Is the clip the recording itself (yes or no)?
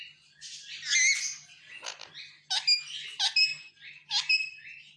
yes